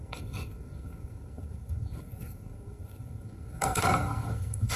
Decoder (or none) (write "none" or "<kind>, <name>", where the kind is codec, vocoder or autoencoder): codec, SNAC